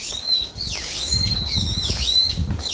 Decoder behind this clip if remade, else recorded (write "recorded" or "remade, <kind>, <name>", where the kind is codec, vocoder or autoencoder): remade, codec, DAC